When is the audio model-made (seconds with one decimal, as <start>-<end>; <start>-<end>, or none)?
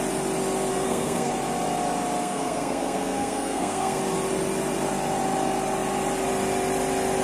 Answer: 0.7-1.3; 2.2-4.0